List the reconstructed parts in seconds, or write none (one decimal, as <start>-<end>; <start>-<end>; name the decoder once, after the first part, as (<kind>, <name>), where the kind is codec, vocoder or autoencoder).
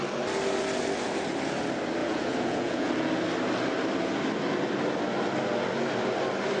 2.0-2.9 (vocoder, Vocos)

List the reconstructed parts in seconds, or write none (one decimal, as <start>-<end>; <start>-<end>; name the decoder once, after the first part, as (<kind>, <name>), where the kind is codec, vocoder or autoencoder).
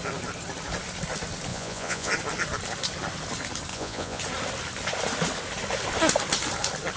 1.5-2.1 (vocoder, Vocos); 3.7-4.2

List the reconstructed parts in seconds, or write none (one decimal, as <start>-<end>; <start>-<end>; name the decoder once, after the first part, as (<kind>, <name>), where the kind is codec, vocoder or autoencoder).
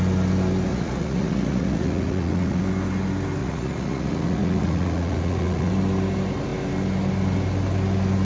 0.7-2.6 (vocoder, Vocos); 3.4-5.7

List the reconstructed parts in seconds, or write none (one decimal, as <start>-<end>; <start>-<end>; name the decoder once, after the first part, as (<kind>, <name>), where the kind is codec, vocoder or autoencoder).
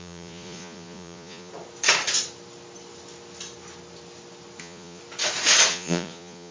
0.0-1.5 (vocoder, Vocos); 4.6-5.0; 5.7-6.5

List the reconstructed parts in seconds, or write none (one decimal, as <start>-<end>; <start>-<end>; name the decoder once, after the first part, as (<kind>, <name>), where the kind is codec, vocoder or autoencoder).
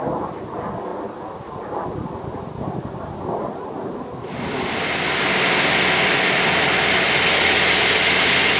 none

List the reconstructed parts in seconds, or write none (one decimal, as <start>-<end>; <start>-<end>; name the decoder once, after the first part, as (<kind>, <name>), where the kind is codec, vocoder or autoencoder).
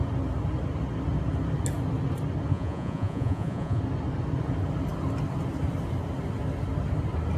2.5-3.8 (vocoder, Vocos)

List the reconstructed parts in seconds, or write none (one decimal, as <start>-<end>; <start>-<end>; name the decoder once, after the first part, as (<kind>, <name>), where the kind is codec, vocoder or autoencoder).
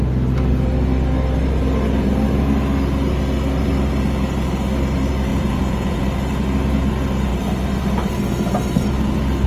5.3-6.0 (vocoder, Vocos)